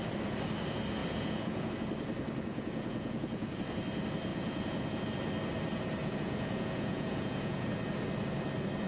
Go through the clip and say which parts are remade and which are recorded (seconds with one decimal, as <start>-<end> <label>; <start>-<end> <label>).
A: 0.0-1.0 recorded; 1.0-1.7 remade; 1.7-2.5 recorded; 2.5-3.6 remade; 3.6-4.3 recorded; 4.3-5.0 remade; 5.0-6.0 recorded; 6.0-7.7 remade; 7.7-8.9 recorded